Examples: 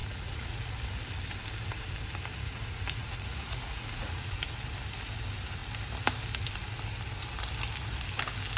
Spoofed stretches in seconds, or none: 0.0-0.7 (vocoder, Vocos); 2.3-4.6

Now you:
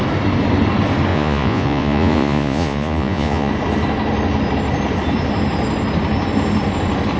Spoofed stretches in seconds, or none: 1.1-3.5 (vocoder, Vocos)

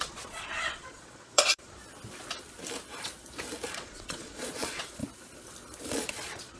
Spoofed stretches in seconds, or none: 0.0-1.8 (vocoder, Vocos); 3.7-5.0; 5.8-6.6

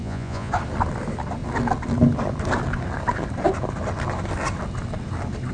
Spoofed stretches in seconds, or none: 0.0-0.5 (vocoder, Vocos)

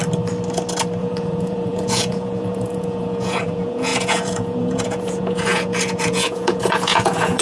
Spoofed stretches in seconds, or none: 1.0-7.4 (vocoder, Vocos)